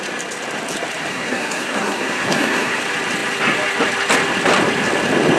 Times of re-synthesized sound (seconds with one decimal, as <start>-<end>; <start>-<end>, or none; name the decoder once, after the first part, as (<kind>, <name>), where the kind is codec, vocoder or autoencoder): 1.1-2.8 (codec, SNAC)